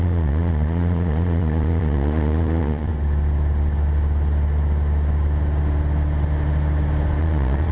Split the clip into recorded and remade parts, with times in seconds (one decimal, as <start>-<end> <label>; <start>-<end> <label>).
0.0-2.9 remade; 2.9-7.2 recorded; 7.2-7.7 remade